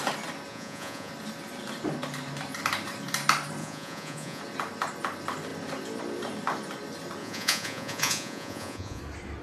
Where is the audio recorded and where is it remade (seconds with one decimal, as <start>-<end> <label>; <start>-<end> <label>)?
0.0-0.5 recorded; 0.5-1.1 remade; 1.1-3.6 recorded; 3.6-4.4 remade; 4.4-7.2 recorded; 7.2-9.0 remade; 9.0-9.4 recorded